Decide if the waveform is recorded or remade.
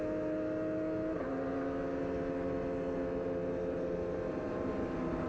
recorded